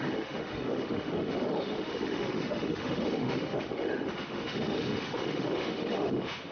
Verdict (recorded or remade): remade